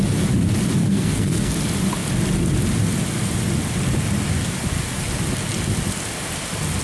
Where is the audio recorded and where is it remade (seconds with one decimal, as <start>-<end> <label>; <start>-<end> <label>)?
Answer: 0.0-0.8 recorded; 0.8-1.5 remade; 1.5-6.8 recorded